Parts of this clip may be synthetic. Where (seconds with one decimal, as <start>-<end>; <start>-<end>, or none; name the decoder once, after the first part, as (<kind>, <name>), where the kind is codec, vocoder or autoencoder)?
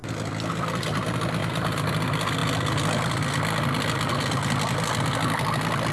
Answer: 1.4-1.9 (vocoder, BigVGAN v2)